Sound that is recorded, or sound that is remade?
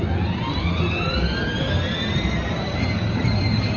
recorded